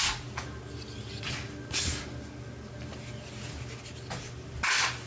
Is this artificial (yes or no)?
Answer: no